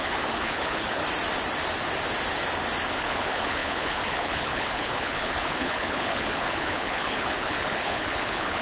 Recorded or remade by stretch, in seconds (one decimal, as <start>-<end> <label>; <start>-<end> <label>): 0.0-1.0 remade; 1.0-2.9 recorded; 2.9-8.6 remade